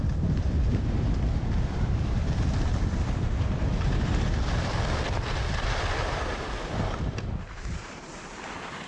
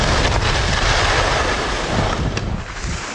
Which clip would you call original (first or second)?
second